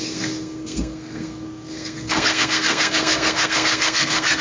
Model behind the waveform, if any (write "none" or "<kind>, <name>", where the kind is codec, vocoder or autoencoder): codec, SNAC